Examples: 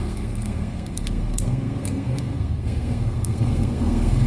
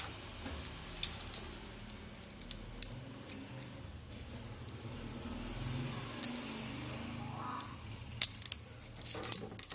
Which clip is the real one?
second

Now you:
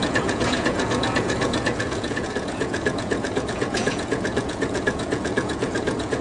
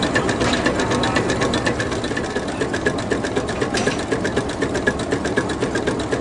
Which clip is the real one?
second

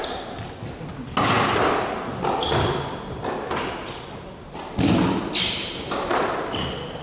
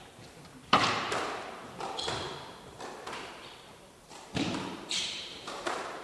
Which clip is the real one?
first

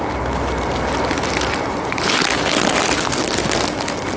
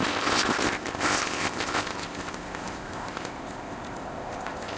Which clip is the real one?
first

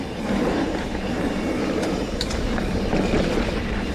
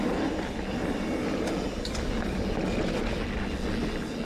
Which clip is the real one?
second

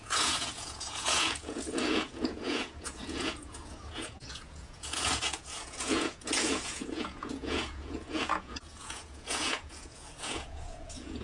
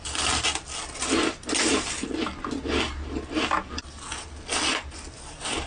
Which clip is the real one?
second